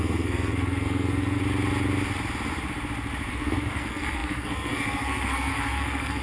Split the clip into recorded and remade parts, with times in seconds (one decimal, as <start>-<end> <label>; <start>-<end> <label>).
0.0-1.4 remade; 1.4-3.3 recorded; 3.3-6.2 remade